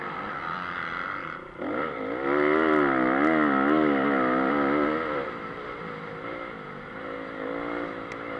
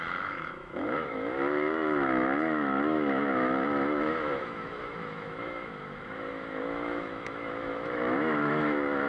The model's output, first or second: second